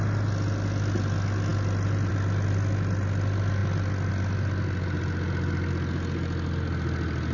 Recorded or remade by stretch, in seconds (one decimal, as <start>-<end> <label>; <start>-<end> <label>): 0.0-7.3 recorded